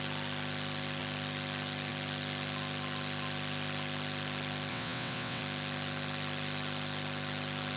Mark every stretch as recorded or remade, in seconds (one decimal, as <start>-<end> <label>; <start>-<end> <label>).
0.0-4.7 recorded; 4.7-5.4 remade; 5.4-7.8 recorded